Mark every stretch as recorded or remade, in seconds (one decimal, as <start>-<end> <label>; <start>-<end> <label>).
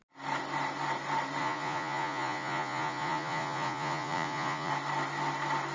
0.0-1.4 recorded; 1.4-4.7 remade; 4.7-5.7 recorded